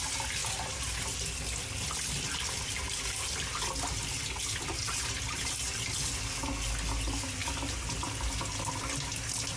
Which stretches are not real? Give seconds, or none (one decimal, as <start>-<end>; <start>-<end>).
none